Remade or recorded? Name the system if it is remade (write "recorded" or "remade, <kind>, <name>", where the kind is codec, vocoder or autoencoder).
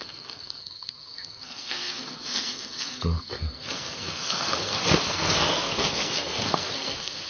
remade, codec, SNAC